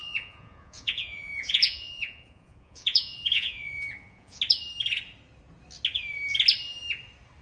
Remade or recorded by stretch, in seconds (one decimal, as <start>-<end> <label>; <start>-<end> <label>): 0.0-4.4 remade; 4.4-7.4 recorded